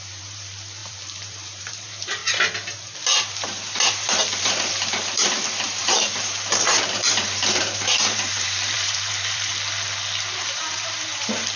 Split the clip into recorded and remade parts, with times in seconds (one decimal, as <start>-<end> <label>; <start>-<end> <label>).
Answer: 0.0-2.2 remade; 2.2-3.3 recorded; 3.3-9.5 remade; 9.5-10.4 recorded; 10.4-11.6 remade